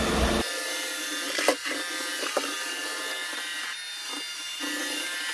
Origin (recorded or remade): recorded